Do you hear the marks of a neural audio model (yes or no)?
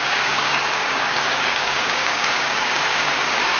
yes